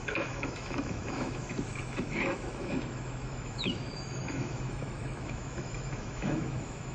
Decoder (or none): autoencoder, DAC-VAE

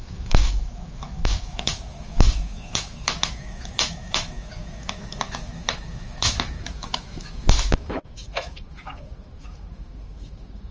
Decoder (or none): autoencoder, DAC-VAE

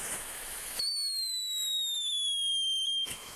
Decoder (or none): autoencoder, DAC-VAE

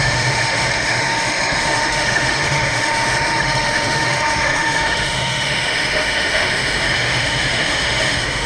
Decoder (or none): autoencoder, DAC-VAE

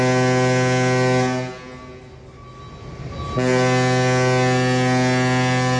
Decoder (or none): none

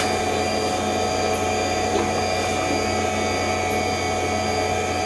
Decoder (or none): none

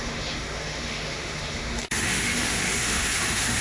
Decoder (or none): autoencoder, DAC-VAE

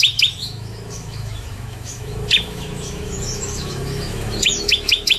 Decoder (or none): autoencoder, DAC-VAE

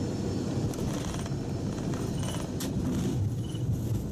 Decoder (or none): none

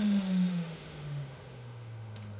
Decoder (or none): autoencoder, DAC-VAE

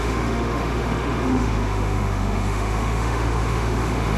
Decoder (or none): autoencoder, DAC-VAE